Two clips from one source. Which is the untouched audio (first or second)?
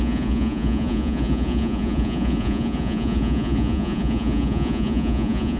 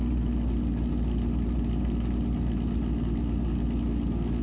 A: second